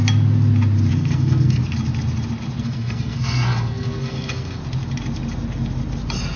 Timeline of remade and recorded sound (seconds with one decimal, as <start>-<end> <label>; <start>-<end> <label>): 0.0-0.9 recorded; 0.9-1.6 remade; 1.6-2.6 recorded; 2.6-4.6 remade; 4.6-6.4 recorded